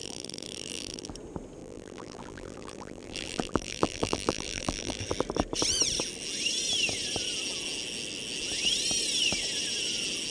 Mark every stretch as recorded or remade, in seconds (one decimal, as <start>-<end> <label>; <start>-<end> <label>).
0.0-1.1 remade; 1.1-1.6 recorded; 1.6-5.0 remade; 5.0-10.3 recorded